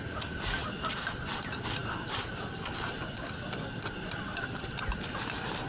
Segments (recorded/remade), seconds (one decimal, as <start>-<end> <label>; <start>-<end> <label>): 0.0-5.7 recorded